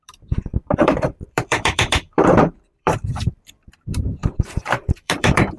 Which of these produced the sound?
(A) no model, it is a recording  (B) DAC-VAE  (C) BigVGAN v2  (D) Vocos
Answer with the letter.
C